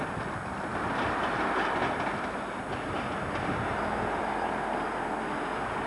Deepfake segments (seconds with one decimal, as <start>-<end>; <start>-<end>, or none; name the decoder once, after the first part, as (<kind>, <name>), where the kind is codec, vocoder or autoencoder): none